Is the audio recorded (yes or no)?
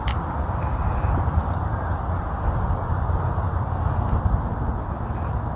yes